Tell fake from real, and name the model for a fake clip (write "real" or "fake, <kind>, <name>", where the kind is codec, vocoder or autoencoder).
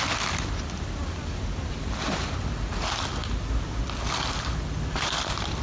real